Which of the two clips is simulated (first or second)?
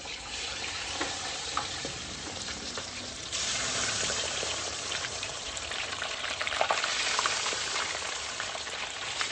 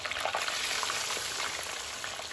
first